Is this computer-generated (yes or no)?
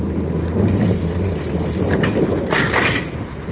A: no